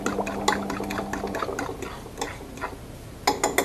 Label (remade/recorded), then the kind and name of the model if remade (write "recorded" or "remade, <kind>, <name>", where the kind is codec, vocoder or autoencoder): recorded